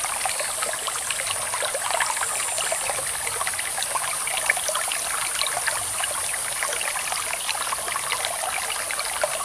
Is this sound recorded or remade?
recorded